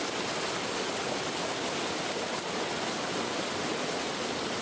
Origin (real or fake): real